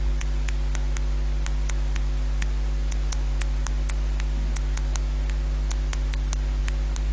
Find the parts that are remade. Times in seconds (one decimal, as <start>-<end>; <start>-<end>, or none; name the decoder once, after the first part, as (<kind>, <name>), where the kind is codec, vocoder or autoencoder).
none